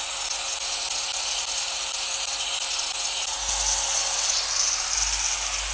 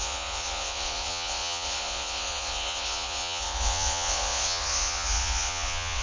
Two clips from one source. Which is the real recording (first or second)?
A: first